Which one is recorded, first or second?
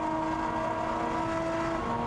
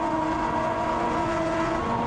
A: first